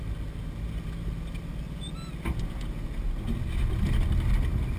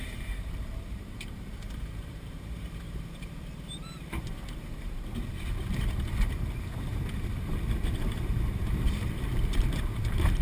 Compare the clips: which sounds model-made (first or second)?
second